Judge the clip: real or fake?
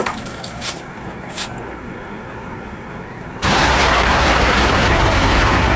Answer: fake